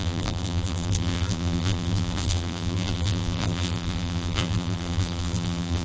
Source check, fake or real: fake